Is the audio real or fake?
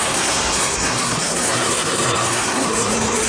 fake